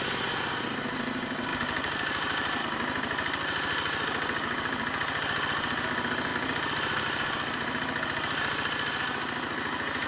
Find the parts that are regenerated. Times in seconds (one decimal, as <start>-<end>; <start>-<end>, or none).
1.5-2.6